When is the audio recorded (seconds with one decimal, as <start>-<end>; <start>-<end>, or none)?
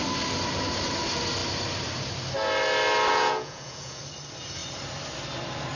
0.0-3.1; 4.0-5.8